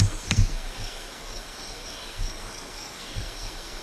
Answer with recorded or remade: remade